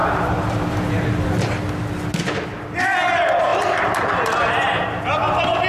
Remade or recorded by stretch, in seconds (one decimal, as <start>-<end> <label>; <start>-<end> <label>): 0.0-1.1 remade; 1.1-5.7 recorded